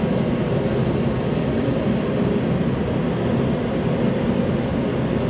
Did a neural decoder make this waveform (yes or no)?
no